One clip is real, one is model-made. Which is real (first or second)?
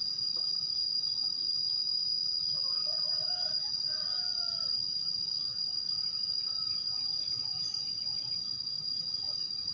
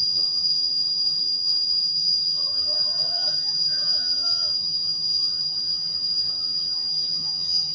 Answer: first